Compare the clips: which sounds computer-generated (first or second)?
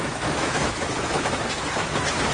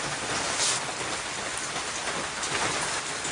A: first